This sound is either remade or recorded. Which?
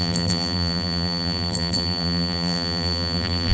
remade